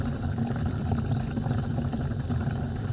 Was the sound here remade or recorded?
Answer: remade